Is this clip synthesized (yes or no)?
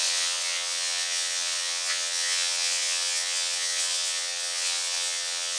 yes